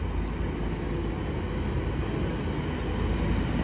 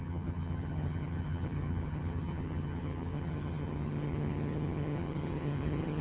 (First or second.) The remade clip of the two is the second